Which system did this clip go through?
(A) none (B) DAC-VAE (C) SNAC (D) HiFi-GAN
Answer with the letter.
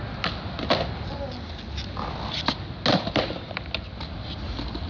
A